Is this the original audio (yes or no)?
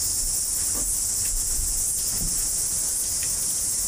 yes